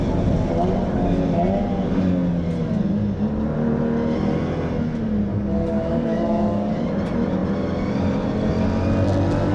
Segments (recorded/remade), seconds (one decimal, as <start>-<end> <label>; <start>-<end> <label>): 0.0-5.3 recorded; 5.3-6.7 remade; 6.7-9.5 recorded